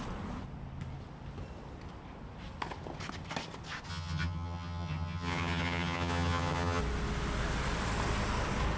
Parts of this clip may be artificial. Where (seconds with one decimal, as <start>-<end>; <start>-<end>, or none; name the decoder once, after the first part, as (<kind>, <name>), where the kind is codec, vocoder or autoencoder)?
3.9-6.8 (vocoder, HiFi-GAN)